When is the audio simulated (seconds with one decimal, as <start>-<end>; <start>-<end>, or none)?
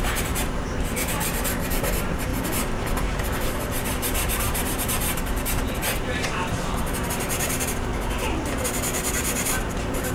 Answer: 0.0-2.3; 3.2-7.9; 9.1-10.1